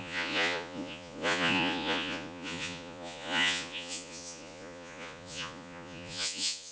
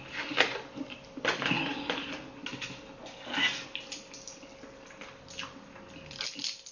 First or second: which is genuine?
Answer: second